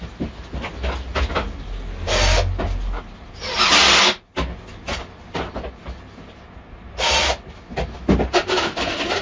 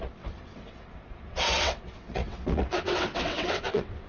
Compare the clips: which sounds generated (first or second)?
second